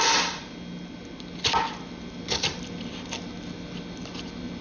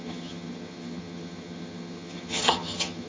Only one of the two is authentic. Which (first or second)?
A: first